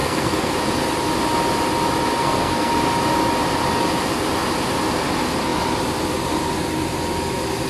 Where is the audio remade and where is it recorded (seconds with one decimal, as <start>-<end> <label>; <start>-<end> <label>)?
0.0-0.5 remade; 0.5-2.2 recorded; 2.2-2.7 remade; 2.7-7.7 recorded